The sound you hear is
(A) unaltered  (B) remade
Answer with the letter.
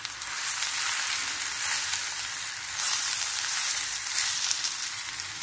B